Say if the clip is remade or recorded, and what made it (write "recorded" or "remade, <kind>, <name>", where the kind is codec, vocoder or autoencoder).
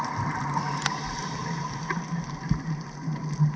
recorded